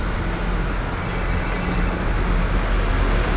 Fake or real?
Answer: real